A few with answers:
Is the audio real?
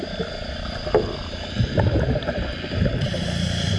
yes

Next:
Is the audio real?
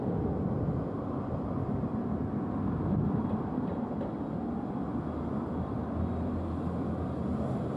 yes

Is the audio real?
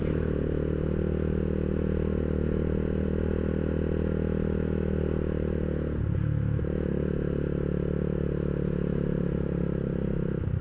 yes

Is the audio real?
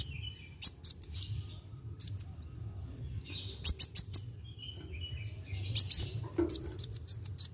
yes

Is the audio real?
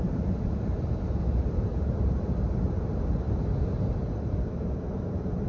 no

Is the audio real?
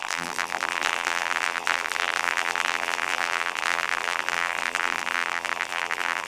no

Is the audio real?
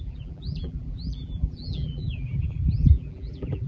no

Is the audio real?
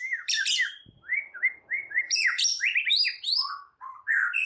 no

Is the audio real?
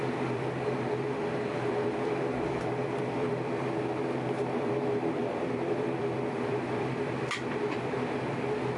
no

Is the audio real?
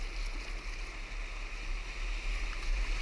yes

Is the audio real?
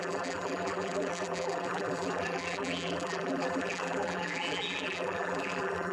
no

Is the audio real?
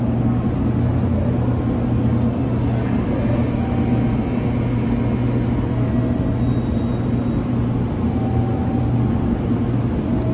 yes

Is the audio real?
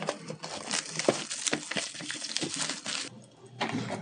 yes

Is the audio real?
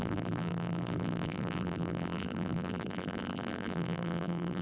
no